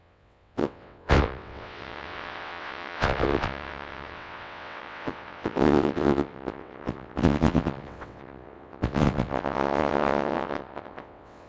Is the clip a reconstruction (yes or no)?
yes